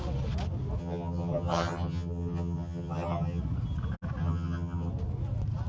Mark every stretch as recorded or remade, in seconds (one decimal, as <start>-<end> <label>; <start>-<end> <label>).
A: 0.0-0.8 recorded; 0.8-3.4 remade; 3.4-4.2 recorded; 4.2-4.9 remade; 4.9-5.7 recorded